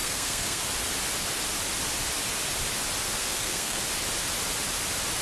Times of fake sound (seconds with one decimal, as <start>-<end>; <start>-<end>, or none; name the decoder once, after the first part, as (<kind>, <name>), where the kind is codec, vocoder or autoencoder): 0.0-0.6 (codec, SNAC); 3.2-3.8